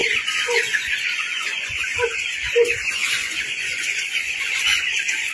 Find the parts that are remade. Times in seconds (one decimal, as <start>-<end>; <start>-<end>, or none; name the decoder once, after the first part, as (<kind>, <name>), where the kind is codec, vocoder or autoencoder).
0.0-1.9 (vocoder, Vocos); 2.9-5.3